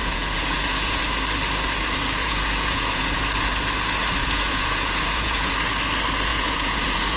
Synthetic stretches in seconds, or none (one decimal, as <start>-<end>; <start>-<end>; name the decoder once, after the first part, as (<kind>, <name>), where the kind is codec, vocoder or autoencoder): 0.0-1.0 (vocoder, Vocos); 2.2-3.2; 4.2-5.5; 6.3-7.2